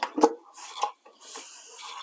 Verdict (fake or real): fake